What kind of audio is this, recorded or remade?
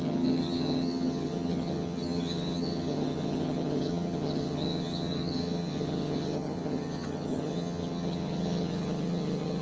remade